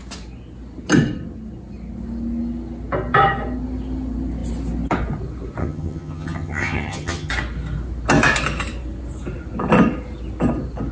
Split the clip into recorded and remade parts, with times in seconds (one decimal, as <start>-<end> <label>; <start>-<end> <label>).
0.0-5.6 recorded; 5.6-7.3 remade; 7.3-10.9 recorded